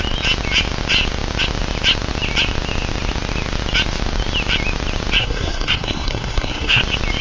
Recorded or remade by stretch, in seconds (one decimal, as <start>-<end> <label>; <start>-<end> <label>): 0.0-5.2 recorded; 5.2-6.8 remade; 6.8-7.2 recorded